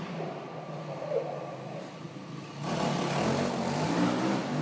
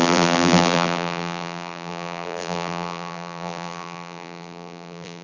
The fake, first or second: second